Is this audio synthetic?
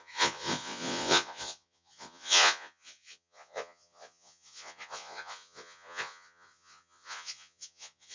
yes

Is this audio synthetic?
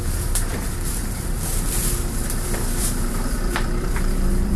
yes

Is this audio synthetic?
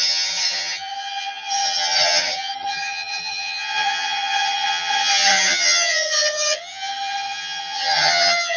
yes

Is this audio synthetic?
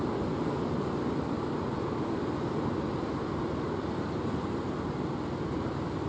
no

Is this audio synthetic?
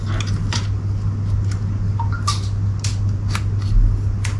no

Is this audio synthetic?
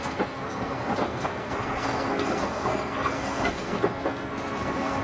yes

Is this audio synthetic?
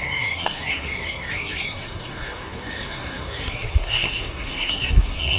yes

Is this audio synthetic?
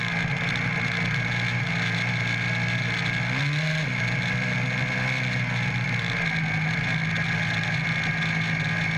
no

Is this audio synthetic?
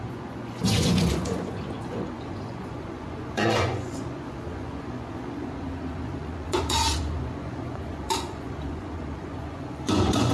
yes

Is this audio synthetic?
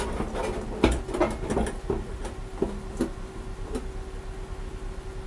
no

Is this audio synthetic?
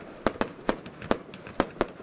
yes